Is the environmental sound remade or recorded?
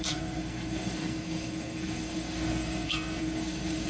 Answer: remade